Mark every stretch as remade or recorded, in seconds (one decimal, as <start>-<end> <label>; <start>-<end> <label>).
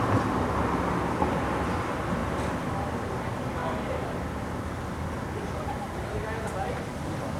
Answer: 0.0-7.4 recorded